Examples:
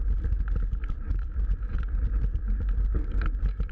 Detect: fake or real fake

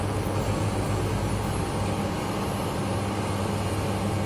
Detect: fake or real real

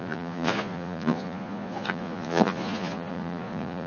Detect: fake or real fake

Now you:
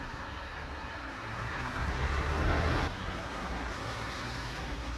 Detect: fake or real fake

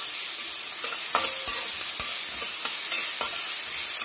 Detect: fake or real real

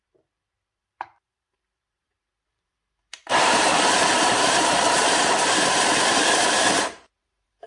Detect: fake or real fake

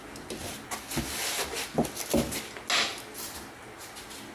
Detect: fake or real real